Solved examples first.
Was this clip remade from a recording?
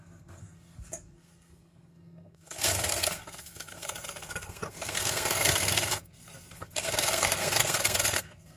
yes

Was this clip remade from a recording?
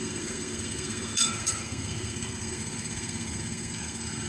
yes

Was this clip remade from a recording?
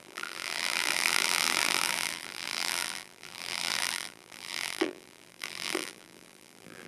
yes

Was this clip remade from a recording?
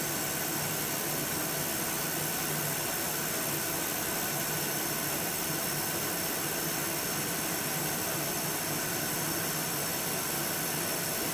no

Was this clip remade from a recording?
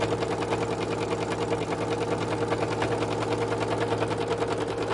no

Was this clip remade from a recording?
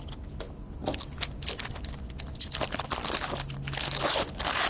no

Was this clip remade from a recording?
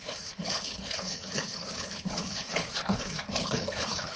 yes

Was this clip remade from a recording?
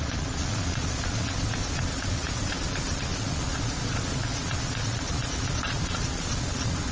yes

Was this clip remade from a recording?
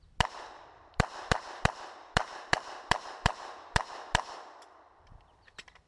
yes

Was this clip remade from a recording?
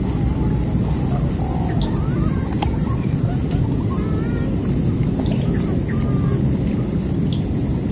no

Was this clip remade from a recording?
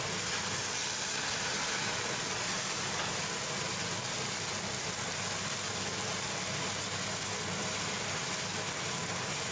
no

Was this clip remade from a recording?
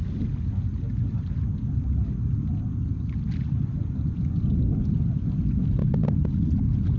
no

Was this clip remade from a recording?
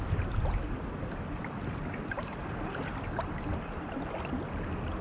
no